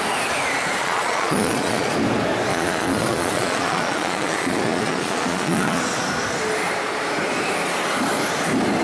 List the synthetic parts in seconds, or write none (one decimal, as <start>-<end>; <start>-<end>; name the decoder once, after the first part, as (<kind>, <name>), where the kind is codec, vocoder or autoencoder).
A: 0.8-1.9 (vocoder, Vocos); 2.5-5.8